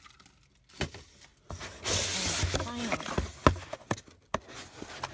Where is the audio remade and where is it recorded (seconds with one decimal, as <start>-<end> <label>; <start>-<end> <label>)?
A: 0.0-5.1 recorded